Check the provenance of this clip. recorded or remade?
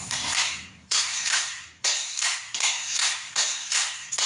remade